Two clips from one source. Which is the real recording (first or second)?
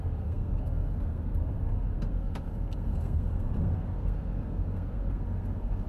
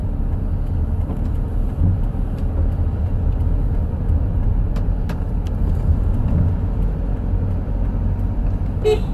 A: second